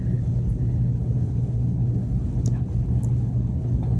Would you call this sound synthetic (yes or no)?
yes